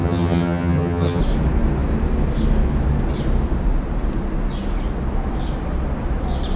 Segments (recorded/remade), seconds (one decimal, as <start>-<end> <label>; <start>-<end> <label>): 0.0-1.2 remade; 1.2-6.6 recorded